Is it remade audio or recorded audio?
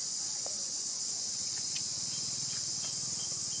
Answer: remade